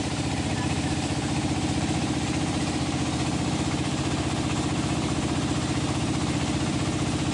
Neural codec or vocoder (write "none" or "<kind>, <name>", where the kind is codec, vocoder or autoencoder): vocoder, BigVGAN v2